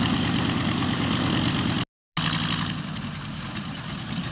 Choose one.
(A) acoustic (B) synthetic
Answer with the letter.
A